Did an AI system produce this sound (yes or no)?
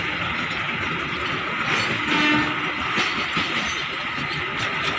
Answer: no